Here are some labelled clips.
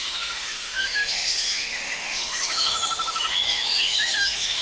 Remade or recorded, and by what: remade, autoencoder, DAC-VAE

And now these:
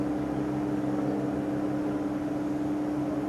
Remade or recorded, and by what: recorded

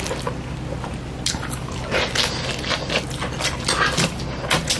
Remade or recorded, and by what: recorded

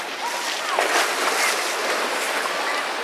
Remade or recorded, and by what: recorded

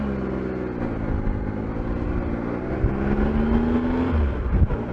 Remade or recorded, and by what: recorded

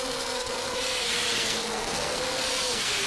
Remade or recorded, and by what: remade, codec, SNAC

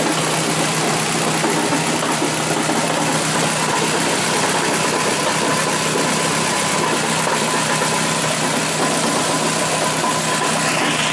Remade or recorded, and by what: recorded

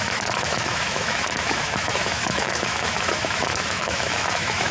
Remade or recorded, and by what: remade, autoencoder, DAC-VAE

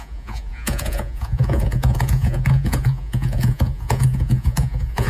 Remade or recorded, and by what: remade, vocoder, Vocos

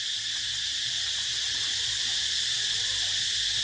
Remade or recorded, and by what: recorded